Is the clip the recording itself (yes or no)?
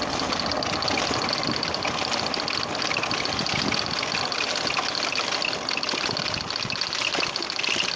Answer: yes